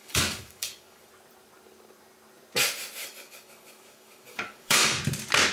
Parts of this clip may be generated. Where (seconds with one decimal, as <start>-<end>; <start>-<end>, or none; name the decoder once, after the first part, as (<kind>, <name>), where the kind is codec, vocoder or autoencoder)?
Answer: 0.0-1.1 (codec, DAC); 3.0-5.0